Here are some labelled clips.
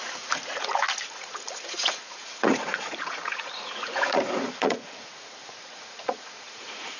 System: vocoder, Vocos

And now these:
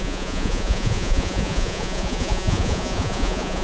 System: vocoder, Vocos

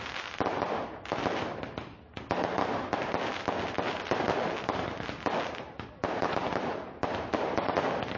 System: none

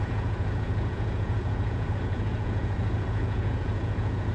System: vocoder, Vocos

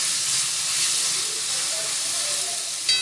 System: none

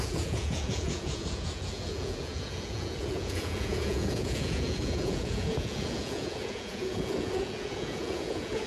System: vocoder, Vocos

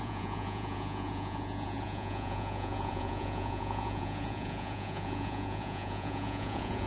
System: vocoder, Vocos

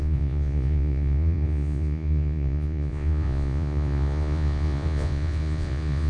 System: vocoder, Vocos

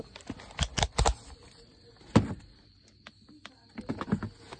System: none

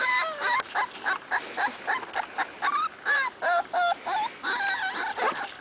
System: none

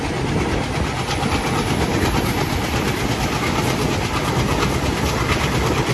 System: none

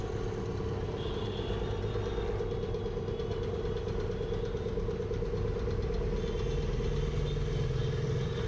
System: none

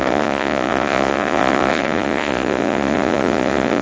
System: vocoder, Vocos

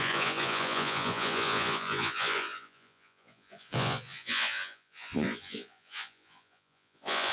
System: vocoder, Vocos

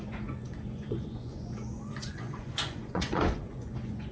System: vocoder, Vocos